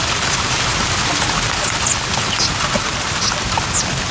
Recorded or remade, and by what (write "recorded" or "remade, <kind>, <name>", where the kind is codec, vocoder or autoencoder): recorded